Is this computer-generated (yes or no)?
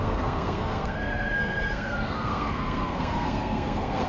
yes